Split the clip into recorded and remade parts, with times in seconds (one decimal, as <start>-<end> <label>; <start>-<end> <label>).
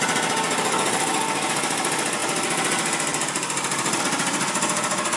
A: 0.0-5.2 recorded